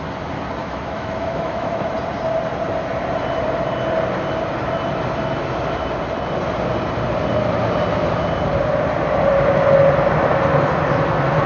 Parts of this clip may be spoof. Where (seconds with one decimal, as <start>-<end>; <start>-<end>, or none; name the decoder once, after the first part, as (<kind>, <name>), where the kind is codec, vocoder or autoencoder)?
0.6-1.9 (autoencoder, DAC-VAE)